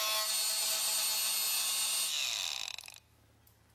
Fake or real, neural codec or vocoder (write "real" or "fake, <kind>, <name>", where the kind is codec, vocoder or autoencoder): real